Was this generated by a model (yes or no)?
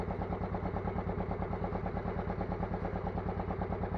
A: no